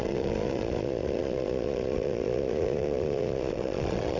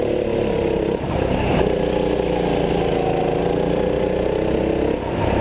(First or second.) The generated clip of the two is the first